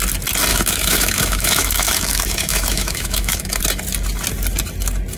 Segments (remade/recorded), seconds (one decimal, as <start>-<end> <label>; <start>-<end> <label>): 0.0-0.5 recorded; 0.5-3.6 remade; 3.6-5.2 recorded